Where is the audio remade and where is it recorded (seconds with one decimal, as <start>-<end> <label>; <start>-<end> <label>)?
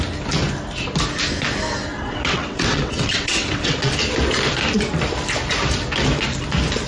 0.0-1.9 recorded; 1.9-3.9 remade; 3.9-6.9 recorded